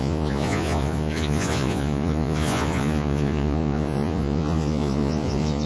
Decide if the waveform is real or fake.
fake